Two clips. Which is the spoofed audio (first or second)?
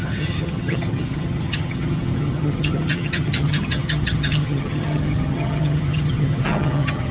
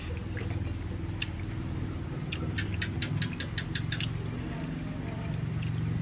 first